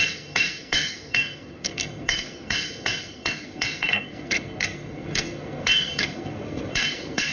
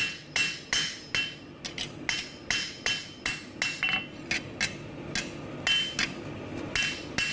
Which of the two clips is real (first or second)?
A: second